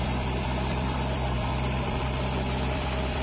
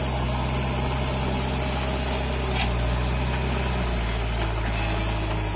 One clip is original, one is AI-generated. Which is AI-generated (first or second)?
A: first